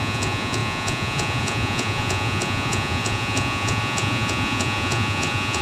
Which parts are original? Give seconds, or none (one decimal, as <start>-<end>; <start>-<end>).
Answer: none